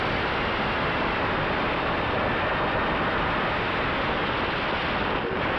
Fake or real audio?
real